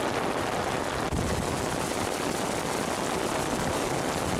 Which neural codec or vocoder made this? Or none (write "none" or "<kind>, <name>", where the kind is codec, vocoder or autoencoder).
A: none